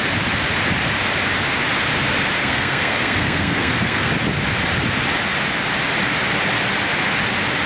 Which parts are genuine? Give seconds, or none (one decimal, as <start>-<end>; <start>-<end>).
0.0-2.4; 4.1-7.7